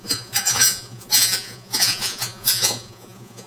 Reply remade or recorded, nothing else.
remade